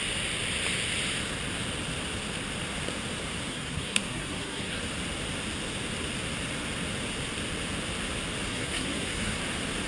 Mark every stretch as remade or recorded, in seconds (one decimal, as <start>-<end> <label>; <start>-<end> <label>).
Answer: 0.0-3.5 recorded; 3.5-4.8 remade; 4.8-8.5 recorded; 8.5-9.4 remade; 9.4-9.9 recorded